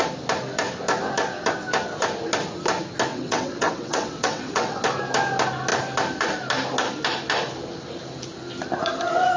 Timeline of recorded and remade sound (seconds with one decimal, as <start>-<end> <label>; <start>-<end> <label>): 0.0-3.1 recorded; 3.1-4.8 remade; 4.8-9.4 recorded